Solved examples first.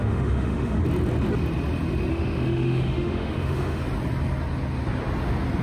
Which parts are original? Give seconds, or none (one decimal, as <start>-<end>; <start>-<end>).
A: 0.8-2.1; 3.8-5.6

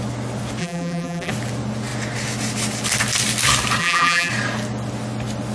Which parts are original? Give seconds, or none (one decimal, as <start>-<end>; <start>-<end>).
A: 0.0-0.6; 1.3-3.8; 4.3-5.5

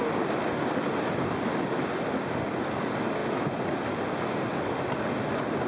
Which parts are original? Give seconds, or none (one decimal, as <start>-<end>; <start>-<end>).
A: 0.0-5.7

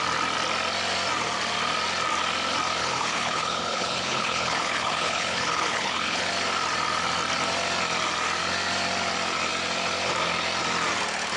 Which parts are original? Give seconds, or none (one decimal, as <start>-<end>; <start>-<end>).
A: 0.0-2.8; 6.3-11.4

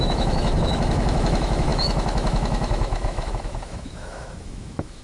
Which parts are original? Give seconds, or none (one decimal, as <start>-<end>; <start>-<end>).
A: none